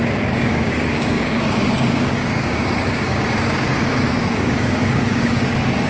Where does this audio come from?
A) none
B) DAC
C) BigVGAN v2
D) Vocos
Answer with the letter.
B